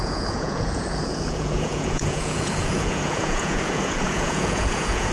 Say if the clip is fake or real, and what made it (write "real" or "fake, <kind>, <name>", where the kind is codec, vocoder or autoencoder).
fake, vocoder, Vocos